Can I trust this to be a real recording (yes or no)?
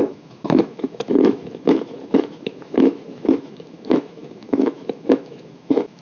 no